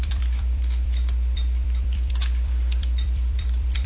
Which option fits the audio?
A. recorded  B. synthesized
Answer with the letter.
B